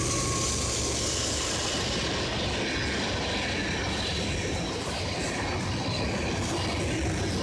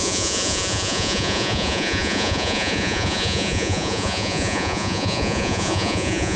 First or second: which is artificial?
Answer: second